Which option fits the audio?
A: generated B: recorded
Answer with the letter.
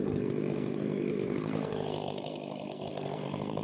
A